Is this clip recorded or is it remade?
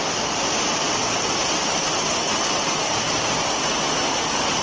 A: recorded